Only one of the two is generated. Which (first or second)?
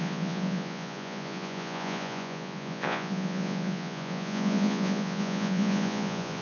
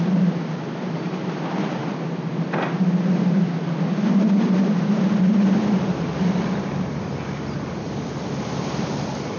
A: first